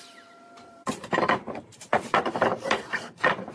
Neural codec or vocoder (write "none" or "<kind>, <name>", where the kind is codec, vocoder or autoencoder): vocoder, BigVGAN v2